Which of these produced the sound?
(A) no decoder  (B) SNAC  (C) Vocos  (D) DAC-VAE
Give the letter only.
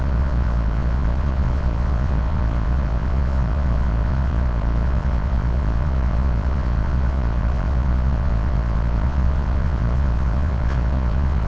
C